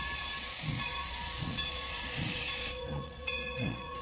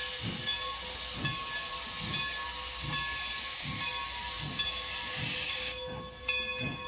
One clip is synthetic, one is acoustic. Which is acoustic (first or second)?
second